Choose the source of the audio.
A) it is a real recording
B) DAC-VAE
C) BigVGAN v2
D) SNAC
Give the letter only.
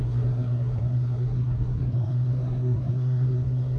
D